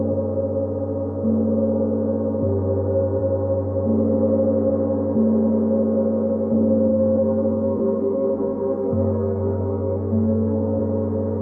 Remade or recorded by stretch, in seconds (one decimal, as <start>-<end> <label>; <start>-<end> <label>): 0.0-6.9 recorded; 6.9-10.8 remade; 10.8-11.4 recorded